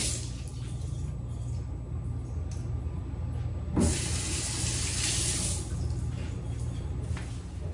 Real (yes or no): yes